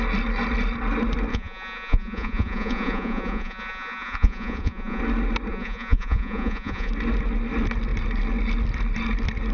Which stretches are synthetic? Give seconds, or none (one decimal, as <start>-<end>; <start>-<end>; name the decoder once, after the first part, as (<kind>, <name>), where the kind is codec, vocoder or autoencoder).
1.3-5.0 (vocoder, Vocos); 5.5-6.9